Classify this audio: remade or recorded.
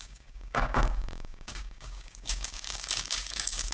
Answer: remade